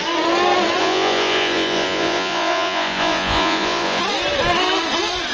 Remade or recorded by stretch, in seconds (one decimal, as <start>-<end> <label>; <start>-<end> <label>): 0.0-0.8 recorded; 0.8-4.0 remade; 4.0-5.3 recorded